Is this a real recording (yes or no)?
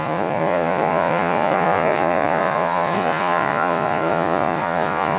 no